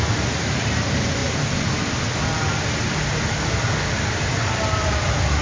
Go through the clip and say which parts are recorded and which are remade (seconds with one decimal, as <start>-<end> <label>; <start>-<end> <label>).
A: 0.0-5.4 recorded